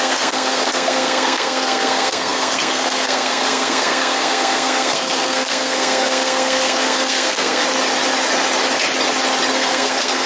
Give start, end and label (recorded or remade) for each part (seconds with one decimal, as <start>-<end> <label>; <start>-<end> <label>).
0.0-7.6 remade; 7.6-9.5 recorded; 9.5-10.3 remade